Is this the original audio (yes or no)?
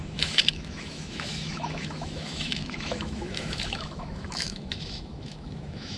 no